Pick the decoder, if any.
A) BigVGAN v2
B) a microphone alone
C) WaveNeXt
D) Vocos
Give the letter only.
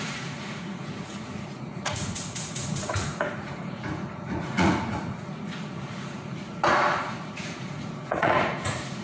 D